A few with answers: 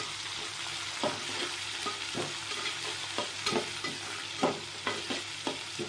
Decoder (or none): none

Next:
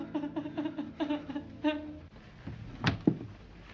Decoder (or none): none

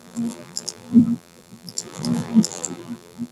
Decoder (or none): vocoder, BigVGAN v2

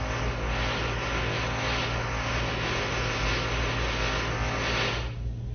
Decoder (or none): none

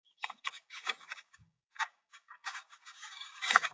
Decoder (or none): codec, DAC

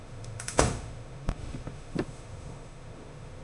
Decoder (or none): autoencoder, DAC-VAE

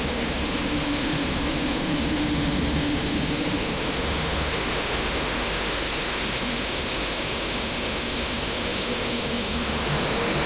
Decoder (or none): autoencoder, DAC-VAE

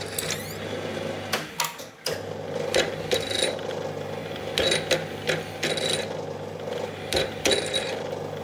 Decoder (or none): none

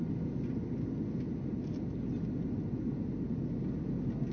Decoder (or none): none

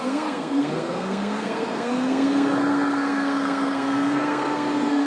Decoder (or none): codec, SNAC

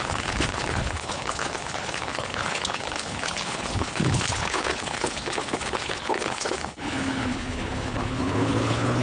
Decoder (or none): codec, HILCodec